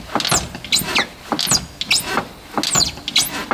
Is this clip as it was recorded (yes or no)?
yes